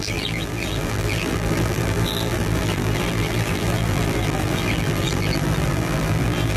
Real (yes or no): no